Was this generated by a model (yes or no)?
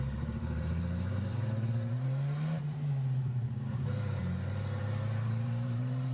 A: yes